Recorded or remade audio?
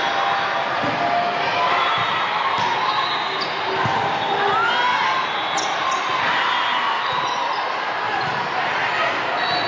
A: recorded